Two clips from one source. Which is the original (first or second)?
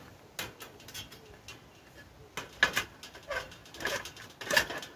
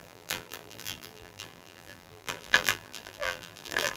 first